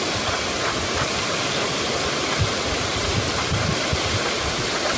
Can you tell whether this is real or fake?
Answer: real